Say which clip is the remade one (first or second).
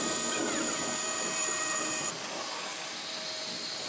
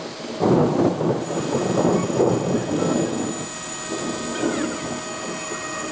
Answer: first